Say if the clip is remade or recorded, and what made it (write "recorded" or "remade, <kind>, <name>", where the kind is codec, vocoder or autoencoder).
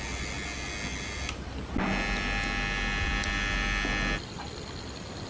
recorded